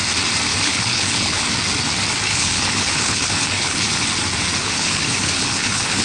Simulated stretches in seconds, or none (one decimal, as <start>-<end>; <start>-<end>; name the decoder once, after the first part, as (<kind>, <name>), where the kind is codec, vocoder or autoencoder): 0.5-1.4 (codec, HILCodec); 2.3-4.0; 4.6-6.0